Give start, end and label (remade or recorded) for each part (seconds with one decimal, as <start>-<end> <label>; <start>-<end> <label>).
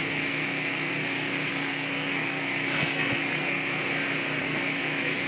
0.0-3.8 remade; 3.8-4.4 recorded; 4.4-5.3 remade